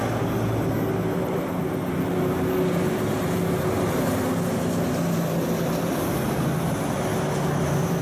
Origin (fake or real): real